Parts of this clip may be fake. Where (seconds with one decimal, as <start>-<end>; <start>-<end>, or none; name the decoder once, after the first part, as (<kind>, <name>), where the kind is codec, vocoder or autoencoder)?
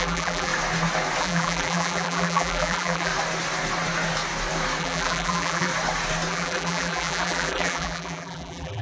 0.0-0.5 (vocoder, BigVGAN v2); 1.2-3.1; 4.8-5.7; 6.3-8.8